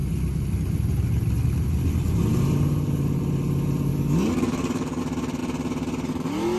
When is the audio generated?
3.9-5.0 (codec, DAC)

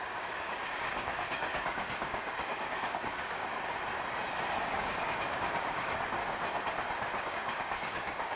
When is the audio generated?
0.0-3.5 (codec, DAC); 4.6-6.2; 7.3-8.4

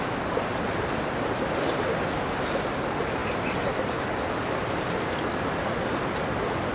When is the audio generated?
none

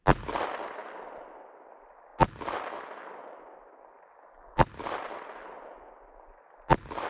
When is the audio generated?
none

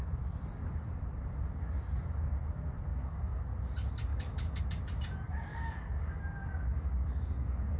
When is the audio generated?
2.9-3.4 (codec, DAC); 4.1-4.6; 5.5-6.2; 6.7-7.8

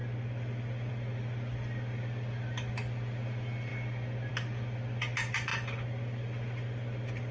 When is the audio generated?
none